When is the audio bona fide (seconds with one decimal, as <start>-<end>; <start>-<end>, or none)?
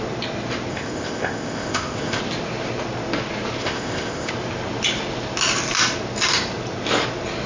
0.0-0.7; 2.2-3.6; 4.3-7.5